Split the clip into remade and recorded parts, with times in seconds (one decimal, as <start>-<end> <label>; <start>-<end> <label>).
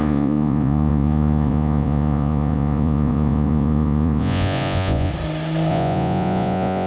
0.0-5.1 remade; 5.1-5.7 recorded; 5.7-6.9 remade